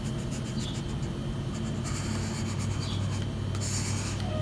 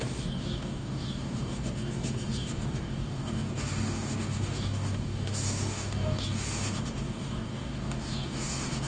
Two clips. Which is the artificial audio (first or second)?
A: second